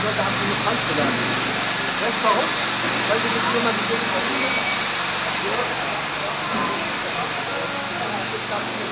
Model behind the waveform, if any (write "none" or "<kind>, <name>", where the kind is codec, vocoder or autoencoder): none